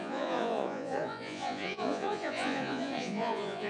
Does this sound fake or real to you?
fake